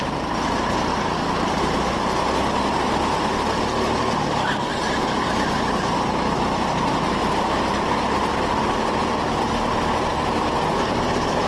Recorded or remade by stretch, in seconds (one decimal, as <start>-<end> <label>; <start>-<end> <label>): 0.0-11.5 recorded